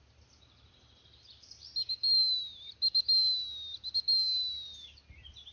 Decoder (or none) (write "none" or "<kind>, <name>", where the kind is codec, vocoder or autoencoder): none